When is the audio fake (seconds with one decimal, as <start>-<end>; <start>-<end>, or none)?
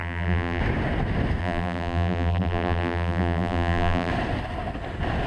0.0-0.6; 1.4-4.1